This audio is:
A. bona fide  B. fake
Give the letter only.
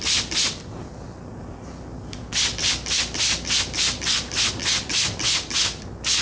A